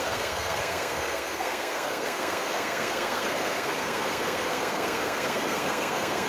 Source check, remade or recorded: remade